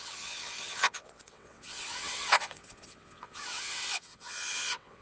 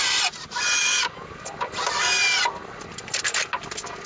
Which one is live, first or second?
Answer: second